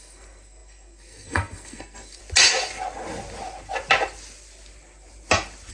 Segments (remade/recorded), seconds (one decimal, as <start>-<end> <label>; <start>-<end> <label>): 0.0-2.2 remade; 2.2-5.7 recorded